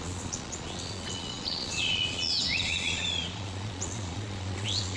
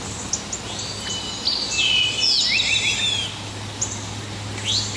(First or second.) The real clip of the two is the second